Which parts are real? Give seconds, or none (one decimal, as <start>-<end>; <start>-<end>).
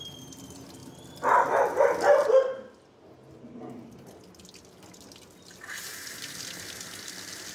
0.0-7.5